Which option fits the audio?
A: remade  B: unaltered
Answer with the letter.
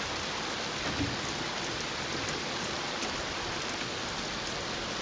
B